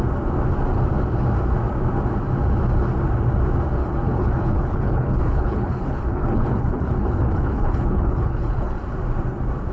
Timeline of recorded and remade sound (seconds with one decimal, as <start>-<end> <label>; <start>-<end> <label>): 0.0-3.8 recorded; 3.8-8.8 remade; 8.8-9.7 recorded